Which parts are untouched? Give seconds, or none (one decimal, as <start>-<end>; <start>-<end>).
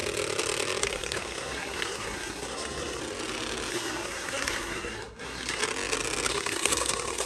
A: 0.0-0.8; 3.0-3.7; 5.6-6.3